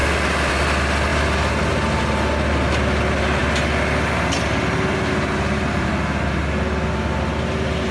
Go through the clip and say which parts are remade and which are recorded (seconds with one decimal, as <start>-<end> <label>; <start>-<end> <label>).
0.0-7.9 recorded